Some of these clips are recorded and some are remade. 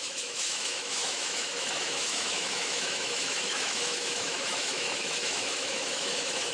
remade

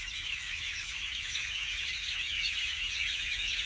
remade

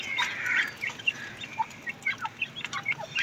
recorded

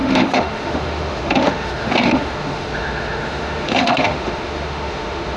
remade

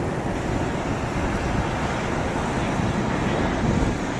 recorded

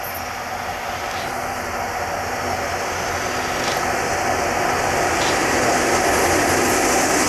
recorded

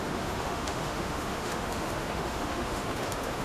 remade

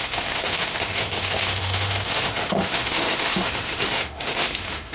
remade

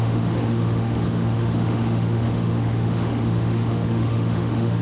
remade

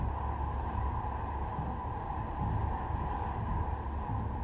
recorded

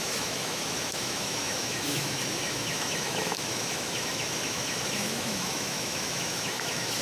remade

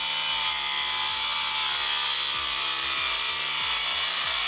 recorded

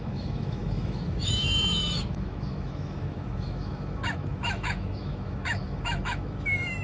remade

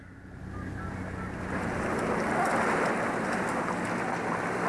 recorded